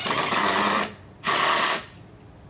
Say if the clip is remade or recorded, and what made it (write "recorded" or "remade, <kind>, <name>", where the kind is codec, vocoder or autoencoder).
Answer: recorded